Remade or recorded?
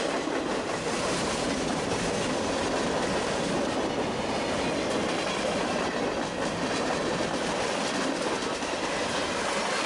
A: recorded